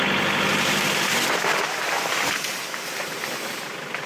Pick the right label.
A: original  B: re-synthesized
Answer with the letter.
A